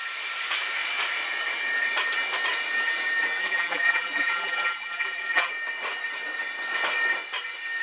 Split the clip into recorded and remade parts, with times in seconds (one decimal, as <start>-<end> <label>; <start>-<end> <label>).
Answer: 0.0-3.4 recorded; 3.4-5.5 remade; 5.5-7.8 recorded